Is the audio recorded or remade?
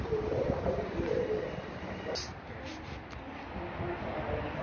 recorded